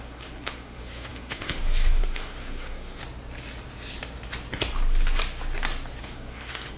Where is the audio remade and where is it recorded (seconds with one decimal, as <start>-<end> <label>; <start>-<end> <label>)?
0.0-3.0 remade; 3.0-6.0 recorded; 6.0-6.8 remade